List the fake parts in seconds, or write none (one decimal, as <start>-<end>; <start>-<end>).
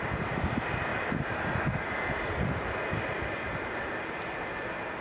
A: none